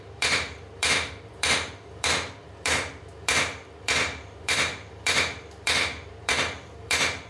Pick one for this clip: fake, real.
fake